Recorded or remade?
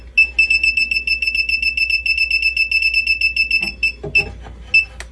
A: recorded